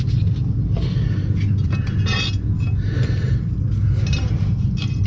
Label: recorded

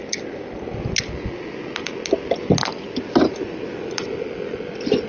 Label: recorded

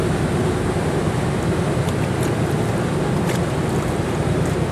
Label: recorded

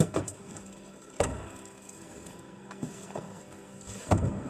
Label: remade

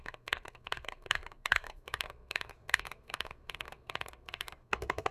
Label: remade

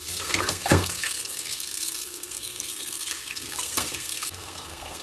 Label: remade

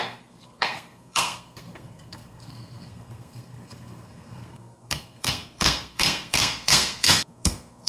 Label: remade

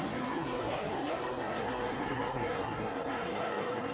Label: remade